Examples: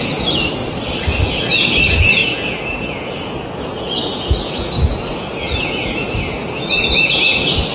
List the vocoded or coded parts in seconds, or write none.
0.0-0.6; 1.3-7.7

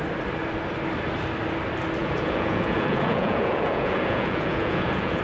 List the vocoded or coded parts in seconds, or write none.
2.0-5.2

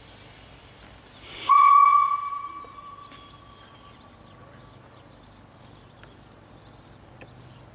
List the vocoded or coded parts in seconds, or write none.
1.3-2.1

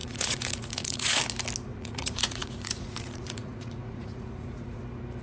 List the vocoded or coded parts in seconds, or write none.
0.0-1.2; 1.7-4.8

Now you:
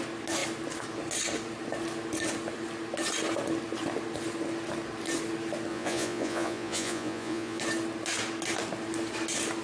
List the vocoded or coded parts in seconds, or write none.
5.7-7.6

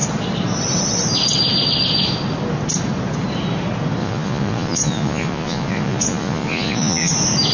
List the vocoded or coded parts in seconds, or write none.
4.0-7.1